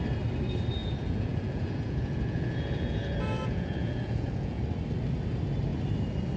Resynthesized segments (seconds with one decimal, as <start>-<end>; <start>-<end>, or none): 0.8-4.6